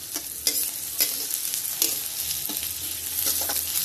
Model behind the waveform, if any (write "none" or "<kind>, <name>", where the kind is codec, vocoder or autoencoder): none